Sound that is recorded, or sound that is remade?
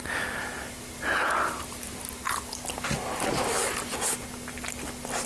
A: recorded